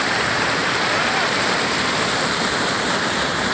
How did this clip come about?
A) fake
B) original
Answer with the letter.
A